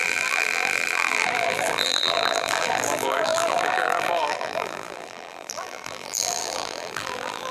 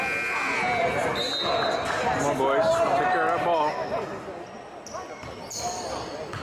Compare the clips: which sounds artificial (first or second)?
first